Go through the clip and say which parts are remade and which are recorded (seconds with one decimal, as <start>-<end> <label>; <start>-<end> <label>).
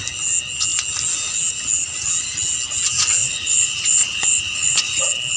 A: 0.0-3.2 recorded; 3.2-5.0 remade; 5.0-5.4 recorded